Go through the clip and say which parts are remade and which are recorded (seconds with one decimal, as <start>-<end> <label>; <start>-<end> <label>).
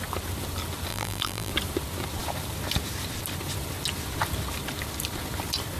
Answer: 0.0-0.9 recorded; 0.9-1.5 remade; 1.5-5.8 recorded